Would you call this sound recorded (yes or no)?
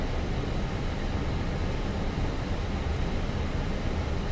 yes